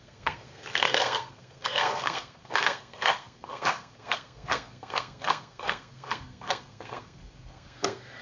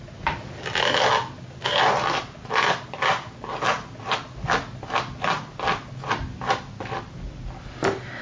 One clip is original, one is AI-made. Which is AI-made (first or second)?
first